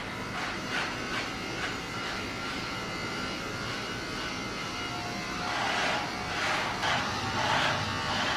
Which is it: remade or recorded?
recorded